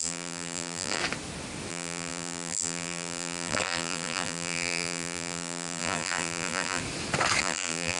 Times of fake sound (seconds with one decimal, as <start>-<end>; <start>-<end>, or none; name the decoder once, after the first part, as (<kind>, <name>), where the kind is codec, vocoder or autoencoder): 0.0-1.0 (vocoder, BigVGAN v2); 1.7-6.8; 7.4-8.0